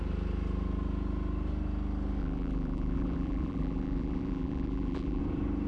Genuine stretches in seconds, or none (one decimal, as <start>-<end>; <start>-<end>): 0.0-2.2; 5.2-5.7